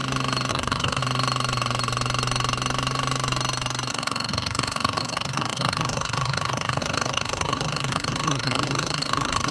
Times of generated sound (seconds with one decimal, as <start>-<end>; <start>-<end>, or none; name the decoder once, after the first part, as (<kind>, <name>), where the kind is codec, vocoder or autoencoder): 0.5-1.0 (codec, SNAC); 3.9-9.5